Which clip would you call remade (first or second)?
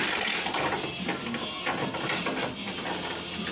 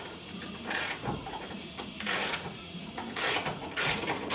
second